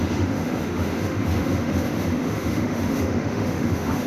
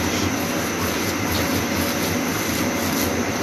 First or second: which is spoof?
first